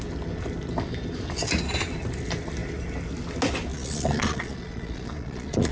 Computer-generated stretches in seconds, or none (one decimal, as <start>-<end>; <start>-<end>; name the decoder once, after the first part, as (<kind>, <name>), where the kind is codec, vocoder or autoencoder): 3.7-5.7 (vocoder, Vocos)